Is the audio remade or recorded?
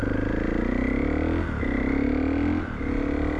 recorded